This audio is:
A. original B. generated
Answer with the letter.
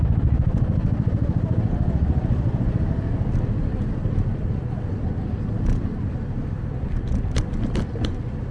A